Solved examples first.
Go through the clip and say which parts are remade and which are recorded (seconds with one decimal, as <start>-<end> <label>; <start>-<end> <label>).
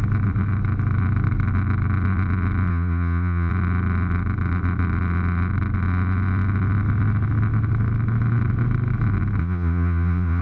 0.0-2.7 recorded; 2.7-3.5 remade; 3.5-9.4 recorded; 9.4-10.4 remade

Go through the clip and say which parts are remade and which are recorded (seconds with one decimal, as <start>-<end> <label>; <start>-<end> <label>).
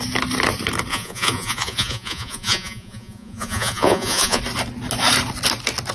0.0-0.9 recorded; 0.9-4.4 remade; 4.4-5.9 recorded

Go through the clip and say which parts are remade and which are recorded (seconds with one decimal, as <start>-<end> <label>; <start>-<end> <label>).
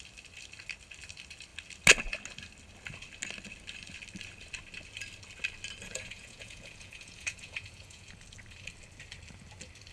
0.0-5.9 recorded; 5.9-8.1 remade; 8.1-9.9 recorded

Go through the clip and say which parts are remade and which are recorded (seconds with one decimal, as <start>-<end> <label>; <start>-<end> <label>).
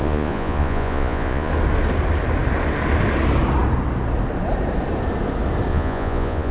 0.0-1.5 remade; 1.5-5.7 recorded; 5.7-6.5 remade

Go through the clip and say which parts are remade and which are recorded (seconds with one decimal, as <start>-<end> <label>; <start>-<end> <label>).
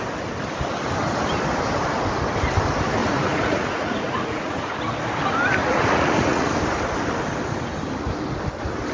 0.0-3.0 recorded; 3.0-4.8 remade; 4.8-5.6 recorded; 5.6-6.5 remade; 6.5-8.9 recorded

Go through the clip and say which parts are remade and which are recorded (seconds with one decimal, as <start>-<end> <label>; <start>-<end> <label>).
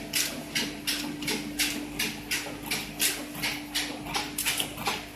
0.0-5.2 recorded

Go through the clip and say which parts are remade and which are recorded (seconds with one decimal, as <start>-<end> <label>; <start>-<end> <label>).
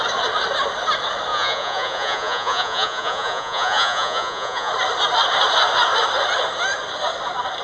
0.0-1.3 recorded; 1.3-4.7 remade; 4.7-7.6 recorded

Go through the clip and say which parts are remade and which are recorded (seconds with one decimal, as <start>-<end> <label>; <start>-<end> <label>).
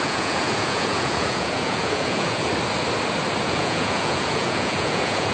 0.0-2.5 remade; 2.5-3.4 recorded; 3.4-5.3 remade